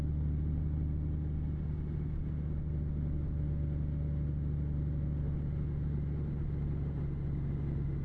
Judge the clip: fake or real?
real